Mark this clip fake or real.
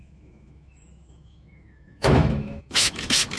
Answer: fake